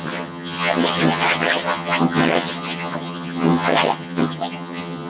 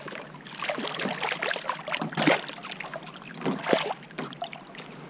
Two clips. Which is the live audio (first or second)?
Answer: second